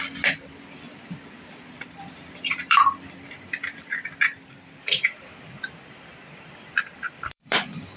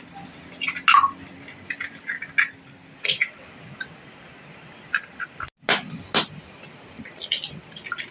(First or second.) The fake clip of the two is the first